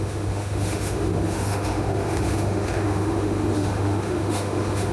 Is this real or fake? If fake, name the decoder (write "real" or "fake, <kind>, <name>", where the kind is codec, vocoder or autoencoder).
fake, autoencoder, DAC-VAE